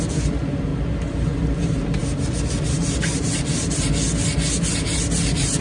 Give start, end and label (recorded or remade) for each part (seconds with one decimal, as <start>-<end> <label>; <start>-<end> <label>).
0.0-0.7 remade; 0.7-1.4 recorded; 1.4-3.5 remade; 3.5-5.6 recorded